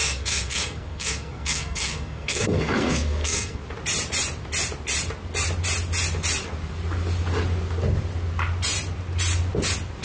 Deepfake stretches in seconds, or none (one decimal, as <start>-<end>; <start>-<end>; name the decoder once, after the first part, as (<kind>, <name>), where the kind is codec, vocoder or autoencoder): 0.0-3.6 (codec, SNAC)